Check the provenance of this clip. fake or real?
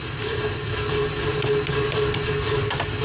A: real